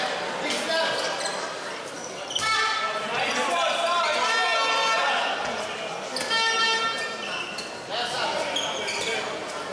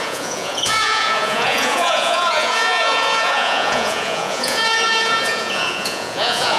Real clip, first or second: first